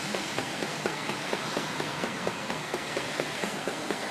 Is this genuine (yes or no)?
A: no